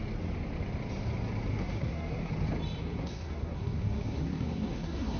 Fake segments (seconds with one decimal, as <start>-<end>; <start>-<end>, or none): 1.5-2.3; 2.8-5.2